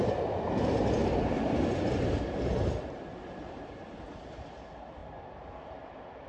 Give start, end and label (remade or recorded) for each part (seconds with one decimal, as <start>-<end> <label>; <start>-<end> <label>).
0.0-6.3 recorded